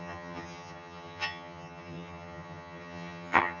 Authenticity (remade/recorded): remade